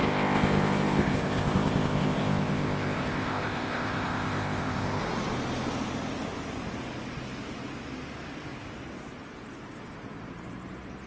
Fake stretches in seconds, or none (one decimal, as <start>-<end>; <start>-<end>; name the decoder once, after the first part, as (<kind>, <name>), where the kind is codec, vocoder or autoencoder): 0.0-5.0 (codec, ZipCodec)